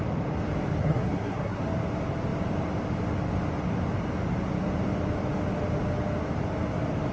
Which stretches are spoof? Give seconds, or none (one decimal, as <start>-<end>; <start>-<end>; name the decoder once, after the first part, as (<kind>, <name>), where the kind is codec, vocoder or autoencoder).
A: 0.8-1.6 (codec, SNAC)